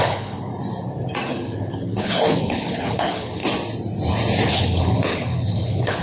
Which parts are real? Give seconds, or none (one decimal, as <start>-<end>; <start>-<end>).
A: 0.5-1.3; 3.4-4.5